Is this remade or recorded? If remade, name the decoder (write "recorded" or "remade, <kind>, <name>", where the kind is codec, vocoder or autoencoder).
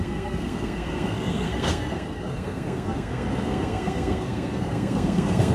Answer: remade, codec, SNAC